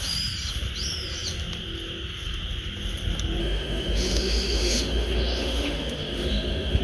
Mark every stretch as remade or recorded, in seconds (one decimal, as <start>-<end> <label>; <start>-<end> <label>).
0.0-3.4 recorded; 3.4-6.8 remade